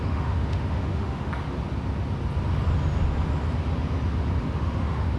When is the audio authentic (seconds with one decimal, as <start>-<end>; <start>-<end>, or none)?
1.3-4.4